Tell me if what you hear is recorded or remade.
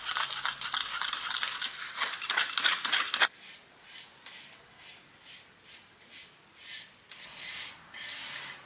recorded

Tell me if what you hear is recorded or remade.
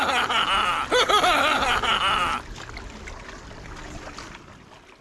recorded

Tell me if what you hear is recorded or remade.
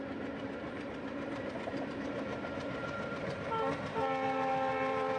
remade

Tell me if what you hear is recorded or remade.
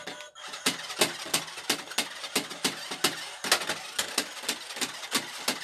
recorded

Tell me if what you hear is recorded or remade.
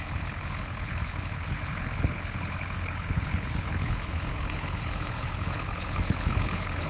remade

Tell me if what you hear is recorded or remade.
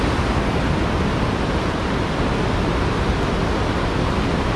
recorded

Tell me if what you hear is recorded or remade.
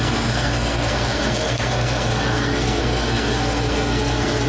remade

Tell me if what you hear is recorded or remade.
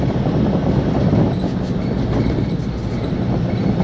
recorded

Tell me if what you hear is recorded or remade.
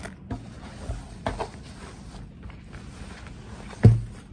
recorded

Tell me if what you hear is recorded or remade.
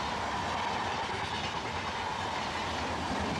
recorded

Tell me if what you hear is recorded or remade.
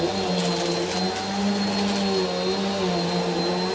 recorded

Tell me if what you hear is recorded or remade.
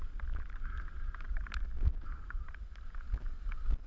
recorded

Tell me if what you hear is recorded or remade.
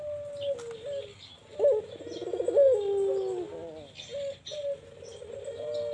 recorded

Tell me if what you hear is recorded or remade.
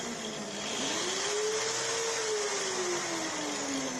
recorded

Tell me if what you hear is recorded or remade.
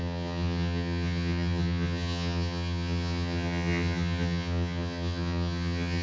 remade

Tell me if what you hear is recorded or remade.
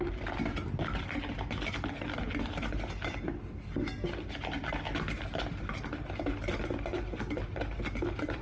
recorded